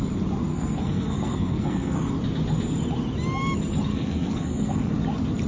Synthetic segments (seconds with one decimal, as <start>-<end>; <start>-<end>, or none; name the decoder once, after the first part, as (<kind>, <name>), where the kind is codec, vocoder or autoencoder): 0.5-2.1 (codec, SNAC); 3.9-4.9